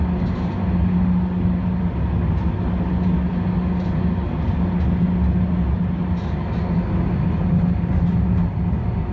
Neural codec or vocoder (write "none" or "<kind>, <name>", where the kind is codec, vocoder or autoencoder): none